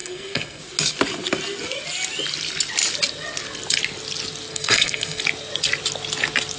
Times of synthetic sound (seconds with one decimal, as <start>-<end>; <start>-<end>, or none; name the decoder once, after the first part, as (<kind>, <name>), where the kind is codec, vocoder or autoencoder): 0.0-0.6 (codec, SNAC); 4.5-5.2